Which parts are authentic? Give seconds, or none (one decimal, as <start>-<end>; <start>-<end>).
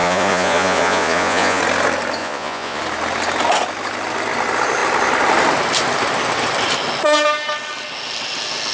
1.6-2.2; 2.8-8.7